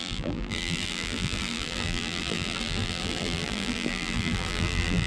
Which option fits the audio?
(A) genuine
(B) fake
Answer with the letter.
B